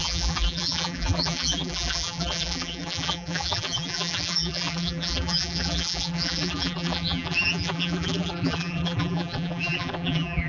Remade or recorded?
remade